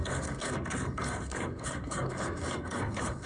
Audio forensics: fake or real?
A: fake